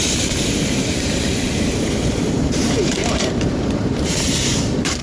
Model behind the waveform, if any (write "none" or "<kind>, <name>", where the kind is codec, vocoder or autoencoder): vocoder, BigVGAN v2